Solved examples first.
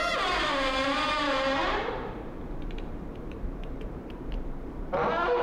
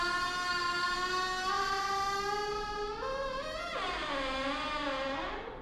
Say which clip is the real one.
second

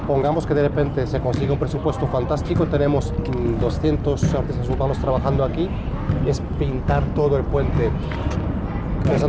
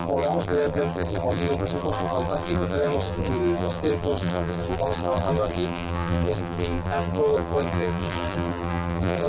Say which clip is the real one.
first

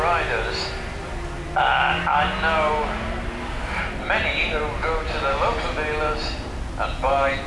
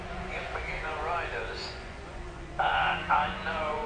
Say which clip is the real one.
first